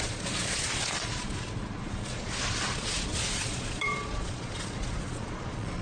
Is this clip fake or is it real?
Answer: fake